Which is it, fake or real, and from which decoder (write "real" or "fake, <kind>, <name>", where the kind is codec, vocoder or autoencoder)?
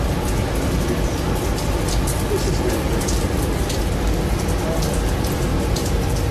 real